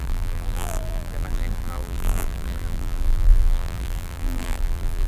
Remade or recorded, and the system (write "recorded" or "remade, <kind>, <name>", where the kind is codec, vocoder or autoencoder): remade, vocoder, BigVGAN v2